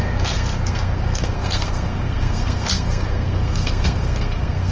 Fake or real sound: fake